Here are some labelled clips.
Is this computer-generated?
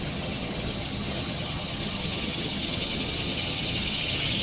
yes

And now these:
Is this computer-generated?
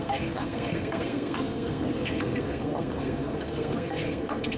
yes